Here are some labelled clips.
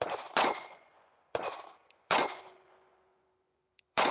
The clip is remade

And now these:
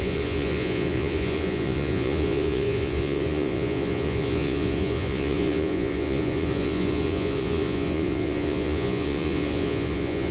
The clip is remade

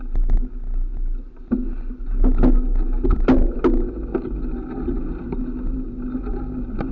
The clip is recorded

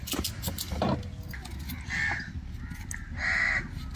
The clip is recorded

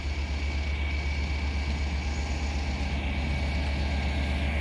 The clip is recorded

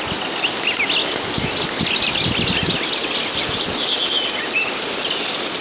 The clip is recorded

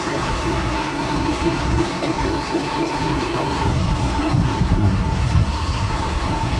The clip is remade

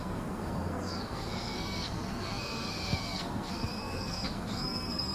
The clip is remade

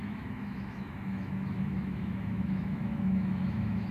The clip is remade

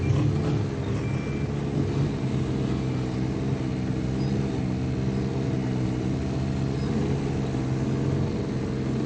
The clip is recorded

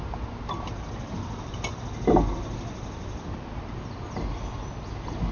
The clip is recorded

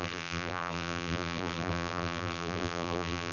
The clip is remade